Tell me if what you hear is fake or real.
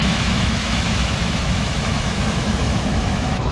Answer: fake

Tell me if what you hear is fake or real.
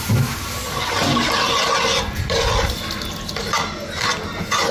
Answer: real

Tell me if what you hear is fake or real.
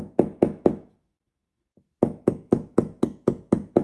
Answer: fake